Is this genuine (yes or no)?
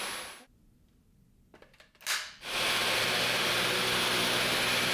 yes